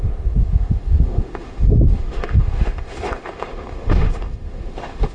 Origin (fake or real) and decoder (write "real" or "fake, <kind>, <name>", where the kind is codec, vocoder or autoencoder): fake, autoencoder, DAC-VAE